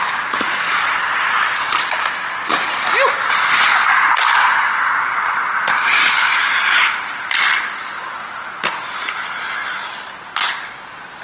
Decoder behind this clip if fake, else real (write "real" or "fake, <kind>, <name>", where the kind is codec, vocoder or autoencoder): real